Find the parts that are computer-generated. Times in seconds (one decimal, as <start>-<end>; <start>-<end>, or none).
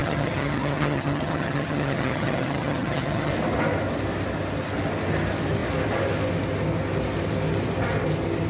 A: 0.0-3.3